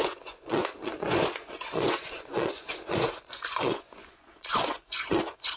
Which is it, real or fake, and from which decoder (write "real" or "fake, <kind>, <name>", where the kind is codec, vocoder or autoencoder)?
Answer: fake, vocoder, Vocos